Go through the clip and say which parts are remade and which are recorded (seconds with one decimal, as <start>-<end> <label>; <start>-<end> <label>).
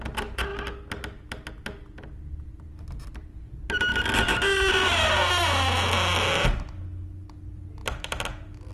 0.0-8.7 recorded